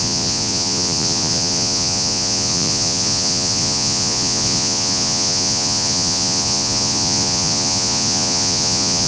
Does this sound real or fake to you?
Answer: fake